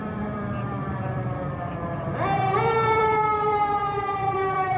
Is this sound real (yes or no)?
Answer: no